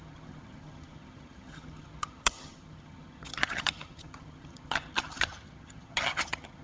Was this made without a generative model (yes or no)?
no